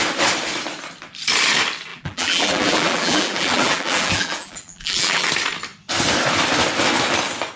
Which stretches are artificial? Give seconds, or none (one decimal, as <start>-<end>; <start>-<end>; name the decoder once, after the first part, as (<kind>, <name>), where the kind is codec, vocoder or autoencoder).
1.9-5.3 (vocoder, BigVGAN v2)